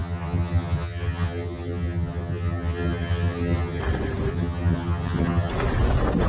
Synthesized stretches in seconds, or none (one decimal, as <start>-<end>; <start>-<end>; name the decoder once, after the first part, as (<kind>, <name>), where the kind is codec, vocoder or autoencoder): 0.0-3.8 (vocoder, HiFi-GAN); 4.3-5.5